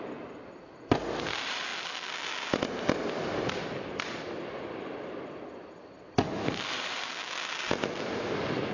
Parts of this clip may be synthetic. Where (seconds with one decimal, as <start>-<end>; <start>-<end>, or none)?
none